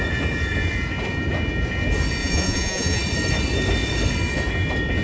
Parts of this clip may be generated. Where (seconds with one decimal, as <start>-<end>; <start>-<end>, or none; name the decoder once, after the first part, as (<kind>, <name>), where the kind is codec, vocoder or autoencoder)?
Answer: 2.2-3.0 (vocoder, Vocos)